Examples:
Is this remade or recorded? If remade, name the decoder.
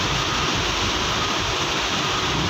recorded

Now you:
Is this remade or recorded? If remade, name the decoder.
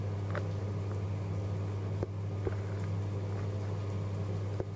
recorded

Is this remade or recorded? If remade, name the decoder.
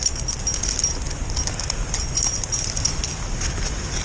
recorded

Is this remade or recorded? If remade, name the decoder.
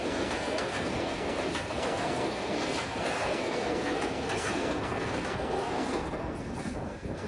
remade, codec, SNAC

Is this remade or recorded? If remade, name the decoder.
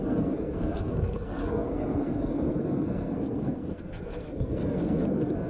remade, codec, SNAC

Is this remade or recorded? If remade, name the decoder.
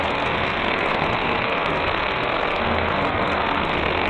remade, codec, SNAC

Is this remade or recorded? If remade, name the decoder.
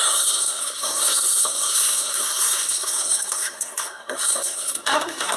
remade, codec, SNAC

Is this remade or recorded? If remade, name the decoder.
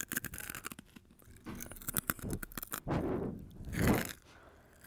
recorded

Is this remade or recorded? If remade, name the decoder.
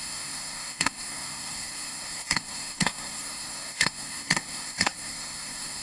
remade, codec, SNAC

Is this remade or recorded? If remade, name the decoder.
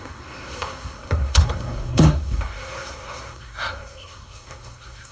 remade, codec, SNAC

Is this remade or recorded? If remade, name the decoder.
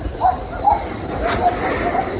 recorded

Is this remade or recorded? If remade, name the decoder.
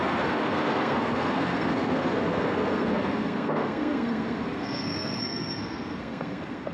remade, codec, SNAC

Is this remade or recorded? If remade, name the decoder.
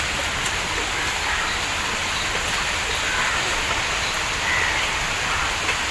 recorded